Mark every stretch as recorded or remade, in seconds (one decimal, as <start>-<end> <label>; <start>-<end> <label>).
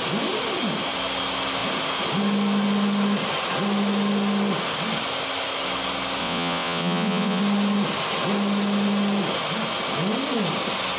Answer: 0.0-6.2 recorded; 6.2-7.4 remade; 7.4-11.0 recorded